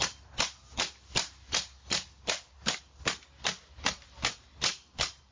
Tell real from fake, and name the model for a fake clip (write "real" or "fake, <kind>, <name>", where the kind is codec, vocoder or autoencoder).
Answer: real